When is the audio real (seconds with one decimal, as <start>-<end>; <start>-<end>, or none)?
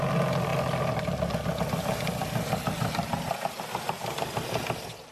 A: 0.0-5.1